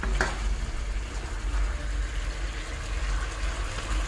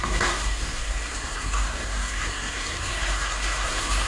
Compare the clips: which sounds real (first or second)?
first